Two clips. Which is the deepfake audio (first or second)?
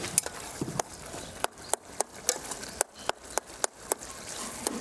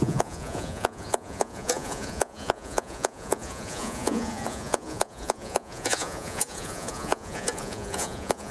second